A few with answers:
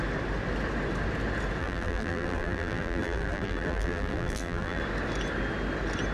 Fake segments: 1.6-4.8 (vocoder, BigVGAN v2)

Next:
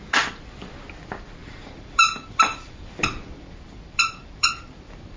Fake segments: 1.4-4.5 (vocoder, BigVGAN v2)

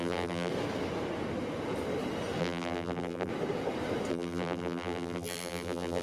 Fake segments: 0.0-0.5 (vocoder, BigVGAN v2); 2.4-3.3; 4.1-6.0

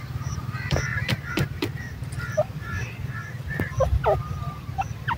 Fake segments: 0.0-2.0 (vocoder, BigVGAN v2)